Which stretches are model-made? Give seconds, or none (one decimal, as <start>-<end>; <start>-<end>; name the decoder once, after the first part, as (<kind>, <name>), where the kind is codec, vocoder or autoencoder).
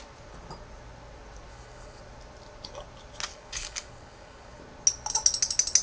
1.5-2.0 (codec, DAC); 3.3-4.6